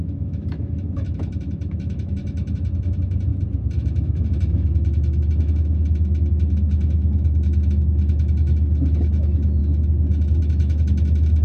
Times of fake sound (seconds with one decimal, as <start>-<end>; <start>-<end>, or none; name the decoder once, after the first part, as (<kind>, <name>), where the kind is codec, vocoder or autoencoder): 0.0-3.3 (autoencoder, DAC-VAE); 3.8-9.6; 10.4-11.4